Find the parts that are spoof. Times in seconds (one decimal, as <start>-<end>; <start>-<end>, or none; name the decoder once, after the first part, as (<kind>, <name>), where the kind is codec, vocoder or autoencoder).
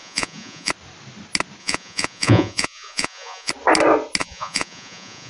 0.0-0.7 (vocoder, Vocos); 1.6-3.5; 4.2-5.3